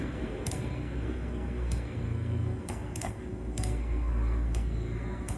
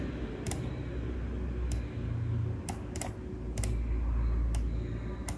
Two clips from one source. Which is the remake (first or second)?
first